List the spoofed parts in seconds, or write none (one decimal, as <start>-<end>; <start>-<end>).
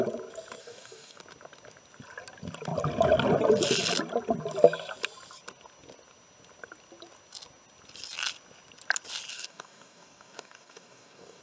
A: 0.6-1.2; 9.3-11.4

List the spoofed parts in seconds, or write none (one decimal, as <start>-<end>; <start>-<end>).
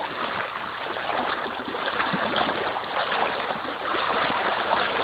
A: 1.1-2.4; 3.9-5.0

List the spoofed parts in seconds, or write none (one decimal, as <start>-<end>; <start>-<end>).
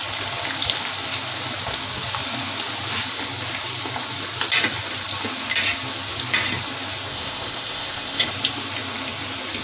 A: 7.1-8.3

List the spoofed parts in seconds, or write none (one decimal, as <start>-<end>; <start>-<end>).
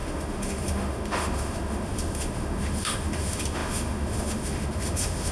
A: 0.0-5.3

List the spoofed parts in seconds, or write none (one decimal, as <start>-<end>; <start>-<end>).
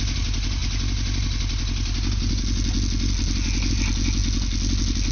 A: none